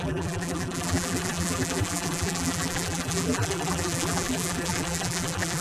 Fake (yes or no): yes